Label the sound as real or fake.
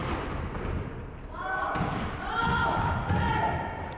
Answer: fake